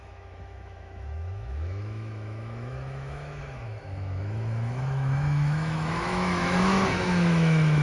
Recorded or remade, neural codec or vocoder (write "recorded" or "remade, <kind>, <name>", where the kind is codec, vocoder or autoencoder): remade, autoencoder, DAC-VAE